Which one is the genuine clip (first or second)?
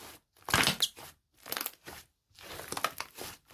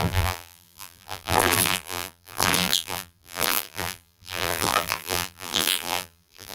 first